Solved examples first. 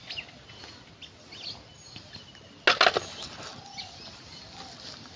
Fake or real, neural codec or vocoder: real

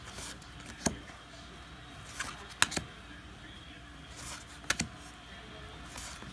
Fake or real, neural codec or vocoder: real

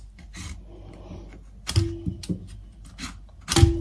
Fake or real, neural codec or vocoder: real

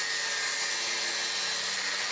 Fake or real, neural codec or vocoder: real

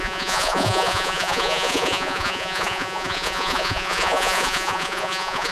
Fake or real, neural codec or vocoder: fake, vocoder, Vocos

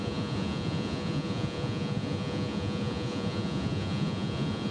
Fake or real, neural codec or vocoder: fake, vocoder, Vocos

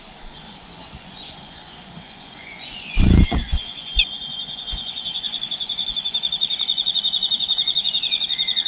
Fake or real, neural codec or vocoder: fake, vocoder, Vocos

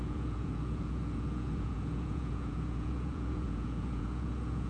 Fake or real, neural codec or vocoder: fake, vocoder, Vocos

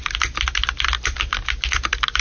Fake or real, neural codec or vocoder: real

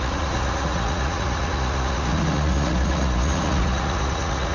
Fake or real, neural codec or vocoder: fake, vocoder, Vocos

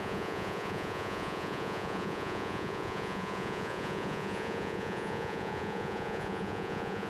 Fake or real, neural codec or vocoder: fake, vocoder, Vocos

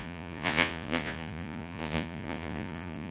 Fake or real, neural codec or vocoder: fake, vocoder, Vocos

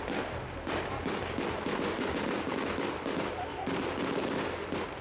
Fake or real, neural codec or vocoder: real